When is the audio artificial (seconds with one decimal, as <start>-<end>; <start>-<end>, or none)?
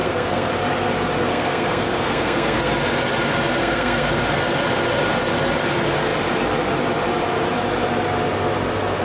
0.0-0.5; 1.3-2.7; 3.6-4.2